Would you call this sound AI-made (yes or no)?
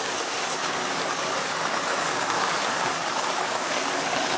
yes